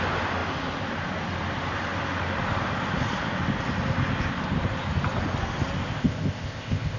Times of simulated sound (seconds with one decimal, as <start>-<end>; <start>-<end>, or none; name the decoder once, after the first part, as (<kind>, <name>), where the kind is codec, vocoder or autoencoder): 6.0-7.0 (codec, ZipCodec)